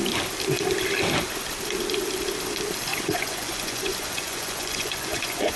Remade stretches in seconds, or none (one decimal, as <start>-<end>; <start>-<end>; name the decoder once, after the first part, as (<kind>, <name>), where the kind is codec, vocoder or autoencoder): 2.9-5.6 (vocoder, Vocos)